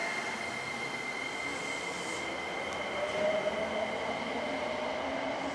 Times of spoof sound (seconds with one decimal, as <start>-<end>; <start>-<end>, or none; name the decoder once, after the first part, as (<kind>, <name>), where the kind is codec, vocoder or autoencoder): none